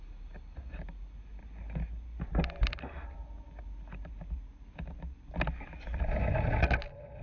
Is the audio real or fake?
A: real